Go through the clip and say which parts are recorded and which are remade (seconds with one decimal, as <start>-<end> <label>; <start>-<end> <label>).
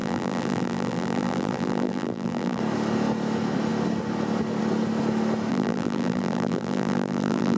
0.0-2.6 remade; 2.6-5.5 recorded; 5.5-7.6 remade